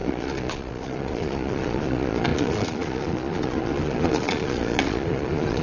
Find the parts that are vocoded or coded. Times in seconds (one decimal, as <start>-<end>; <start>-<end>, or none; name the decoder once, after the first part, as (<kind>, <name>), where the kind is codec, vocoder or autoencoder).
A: 0.0-5.6 (vocoder, Vocos)